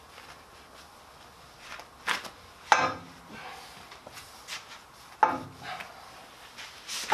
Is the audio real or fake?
real